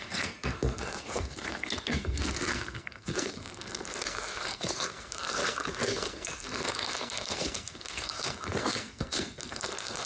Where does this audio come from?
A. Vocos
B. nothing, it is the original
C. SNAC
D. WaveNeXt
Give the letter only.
C